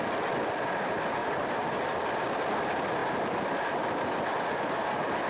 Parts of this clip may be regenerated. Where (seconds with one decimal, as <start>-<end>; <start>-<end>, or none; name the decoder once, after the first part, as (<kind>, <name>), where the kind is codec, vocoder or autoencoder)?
1.2-1.7 (vocoder, BigVGAN v2)